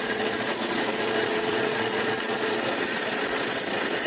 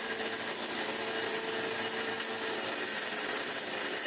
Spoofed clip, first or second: first